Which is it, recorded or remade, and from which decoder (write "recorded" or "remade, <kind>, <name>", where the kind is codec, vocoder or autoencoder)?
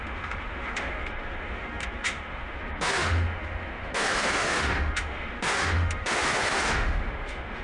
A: remade, autoencoder, DAC-VAE